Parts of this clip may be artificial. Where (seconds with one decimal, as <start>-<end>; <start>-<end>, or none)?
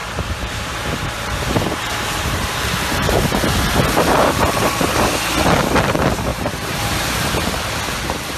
0.0-3.4; 6.3-7.1